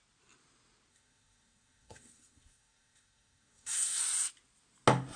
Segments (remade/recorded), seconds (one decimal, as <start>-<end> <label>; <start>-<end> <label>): 0.0-0.9 recorded; 0.9-4.0 remade; 4.0-5.2 recorded